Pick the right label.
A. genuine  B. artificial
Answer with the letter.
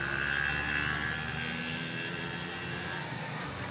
A